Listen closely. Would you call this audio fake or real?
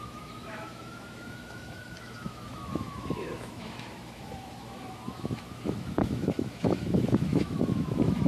fake